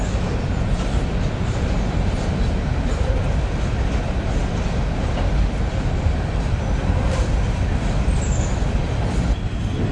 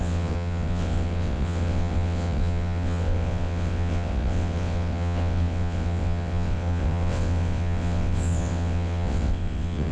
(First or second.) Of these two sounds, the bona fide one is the first